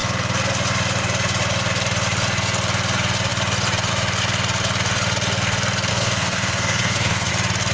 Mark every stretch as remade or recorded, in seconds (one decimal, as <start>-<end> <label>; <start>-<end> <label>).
0.0-5.9 recorded; 5.9-7.3 remade; 7.3-7.7 recorded